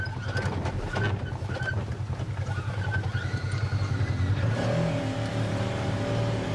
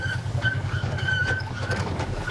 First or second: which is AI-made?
second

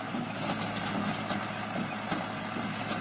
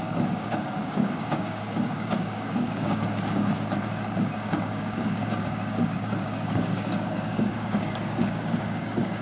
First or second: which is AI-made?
second